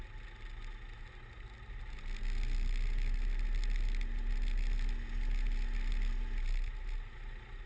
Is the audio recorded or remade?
recorded